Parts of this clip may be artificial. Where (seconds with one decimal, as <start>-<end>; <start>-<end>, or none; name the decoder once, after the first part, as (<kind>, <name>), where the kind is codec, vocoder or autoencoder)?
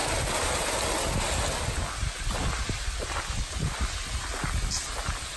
none